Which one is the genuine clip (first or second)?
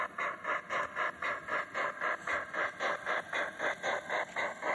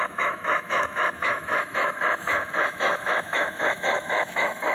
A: first